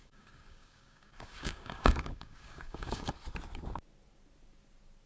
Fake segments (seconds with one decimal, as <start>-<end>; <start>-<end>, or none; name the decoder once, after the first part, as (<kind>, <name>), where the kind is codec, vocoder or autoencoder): 0.0-3.1 (codec, DAC)